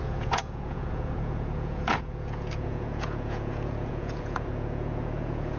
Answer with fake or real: fake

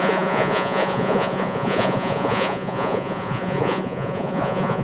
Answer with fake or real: fake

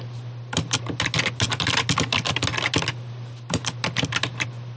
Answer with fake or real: real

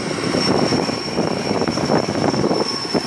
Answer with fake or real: real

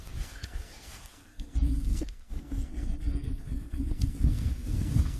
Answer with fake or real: fake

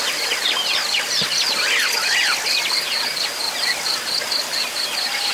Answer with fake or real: real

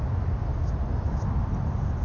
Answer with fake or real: real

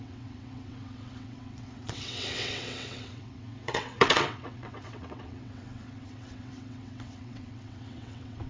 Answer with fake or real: fake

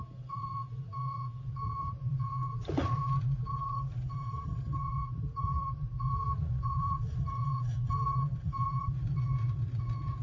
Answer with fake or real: fake